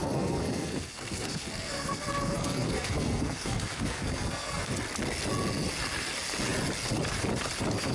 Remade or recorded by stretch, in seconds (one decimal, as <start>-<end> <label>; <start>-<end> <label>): 0.0-4.7 remade; 4.7-7.9 recorded